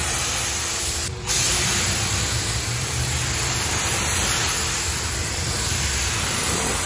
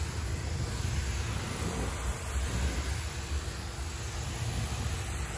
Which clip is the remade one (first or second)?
first